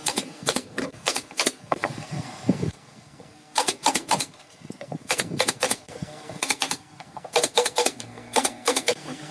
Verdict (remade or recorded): remade